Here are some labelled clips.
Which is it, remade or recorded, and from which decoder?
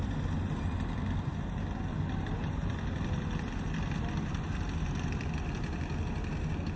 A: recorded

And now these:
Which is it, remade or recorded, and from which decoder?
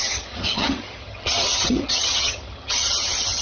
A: remade, vocoder, HiFi-GAN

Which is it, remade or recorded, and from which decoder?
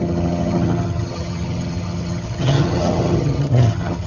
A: remade, vocoder, HiFi-GAN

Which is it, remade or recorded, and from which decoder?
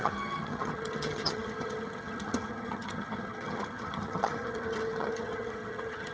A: remade, vocoder, HiFi-GAN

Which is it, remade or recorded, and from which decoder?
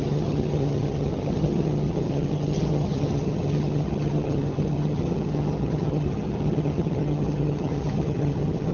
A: remade, vocoder, HiFi-GAN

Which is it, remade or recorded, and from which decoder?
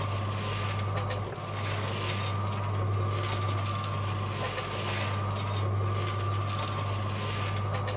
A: recorded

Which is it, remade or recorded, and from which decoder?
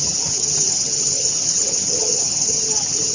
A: remade, vocoder, HiFi-GAN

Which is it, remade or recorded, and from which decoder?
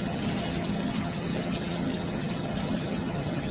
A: remade, vocoder, HiFi-GAN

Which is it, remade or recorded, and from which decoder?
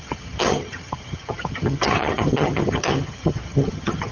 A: remade, vocoder, HiFi-GAN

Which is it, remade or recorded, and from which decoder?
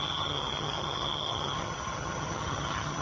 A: remade, vocoder, HiFi-GAN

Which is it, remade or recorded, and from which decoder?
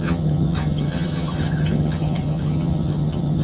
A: remade, vocoder, HiFi-GAN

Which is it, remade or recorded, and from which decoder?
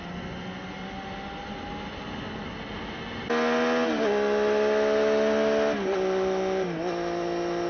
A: recorded